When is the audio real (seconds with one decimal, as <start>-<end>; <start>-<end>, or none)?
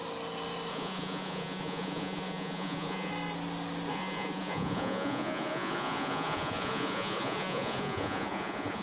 0.0-0.7; 3.1-3.9